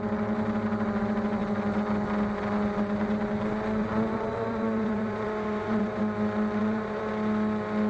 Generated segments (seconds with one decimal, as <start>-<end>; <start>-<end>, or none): 3.8-6.0; 6.6-7.1

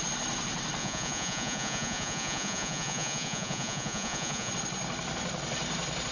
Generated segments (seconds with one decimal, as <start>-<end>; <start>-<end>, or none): 0.8-4.5

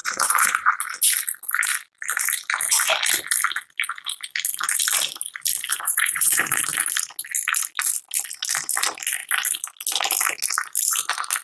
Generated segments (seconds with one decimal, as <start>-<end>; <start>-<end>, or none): 0.0-0.7; 5.7-6.6

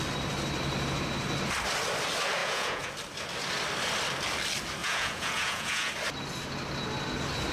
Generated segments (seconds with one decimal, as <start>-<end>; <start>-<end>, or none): 2.4-2.9; 4.8-5.9